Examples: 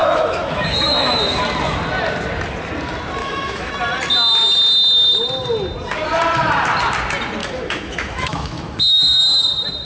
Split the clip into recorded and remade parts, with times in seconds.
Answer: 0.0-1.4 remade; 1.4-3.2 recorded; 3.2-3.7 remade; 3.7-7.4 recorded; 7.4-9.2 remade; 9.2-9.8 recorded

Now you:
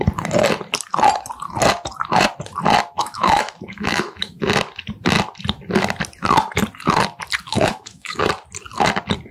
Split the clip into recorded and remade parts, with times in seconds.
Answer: 0.0-3.0 recorded; 3.0-4.4 remade; 4.4-7.5 recorded; 7.5-8.2 remade; 8.2-9.3 recorded

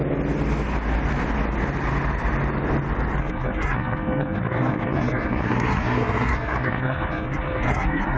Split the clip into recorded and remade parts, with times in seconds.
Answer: 0.0-3.2 recorded; 3.2-8.2 remade